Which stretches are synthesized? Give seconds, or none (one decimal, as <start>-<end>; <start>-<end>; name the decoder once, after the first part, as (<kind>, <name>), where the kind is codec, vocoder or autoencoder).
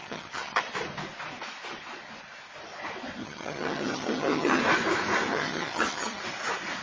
0.0-0.6 (vocoder, HiFi-GAN); 3.2-4.6; 5.3-6.2